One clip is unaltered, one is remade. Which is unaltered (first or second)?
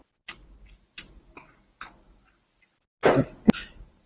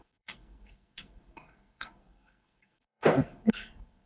first